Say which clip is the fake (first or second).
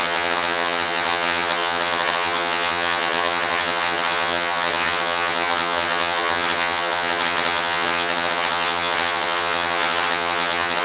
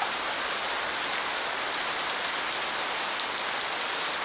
first